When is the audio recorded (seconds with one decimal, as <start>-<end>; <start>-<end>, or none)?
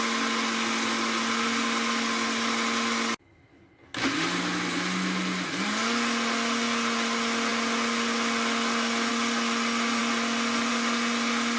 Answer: 0.0-11.6